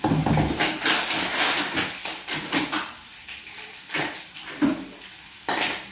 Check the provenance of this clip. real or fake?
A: real